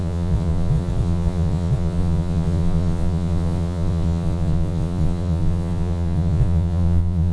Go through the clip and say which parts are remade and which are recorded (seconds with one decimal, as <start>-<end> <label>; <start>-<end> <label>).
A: 0.0-7.3 remade